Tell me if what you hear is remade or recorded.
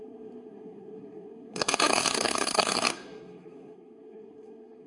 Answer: remade